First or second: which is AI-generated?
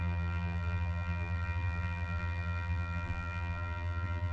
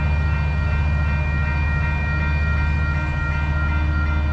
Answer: first